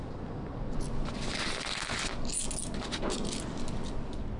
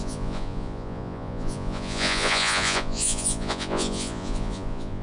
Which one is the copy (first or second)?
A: second